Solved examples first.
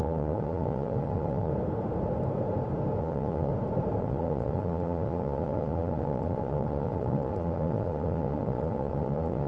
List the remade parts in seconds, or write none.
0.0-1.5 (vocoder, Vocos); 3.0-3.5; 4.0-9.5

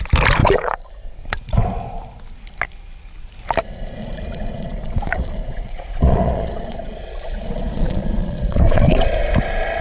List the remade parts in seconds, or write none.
0.4-0.9 (vocoder, Vocos); 4.0-9.2

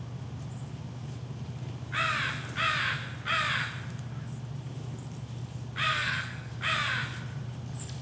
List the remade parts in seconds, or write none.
5.9-6.5 (codec, SNAC)

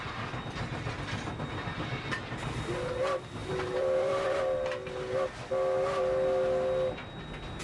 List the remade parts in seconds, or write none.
3.4-4.4 (vocoder, BigVGAN v2)

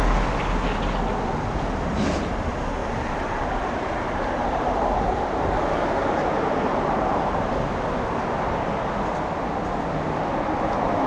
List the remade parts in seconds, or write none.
2.8-5.4 (vocoder, BigVGAN v2); 6.3-7.7

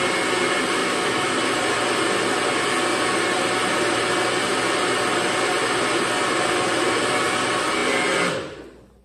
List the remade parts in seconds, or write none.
0.8-1.3 (autoencoder, DAC-VAE)

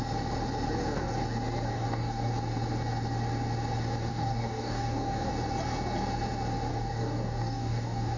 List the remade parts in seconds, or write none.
1.7-2.3 (codec, DAC); 4.1-5.3; 6.7-8.2

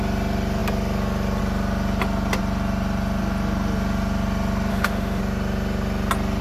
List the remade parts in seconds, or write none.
4.7-5.2 (autoencoder, DAC-VAE)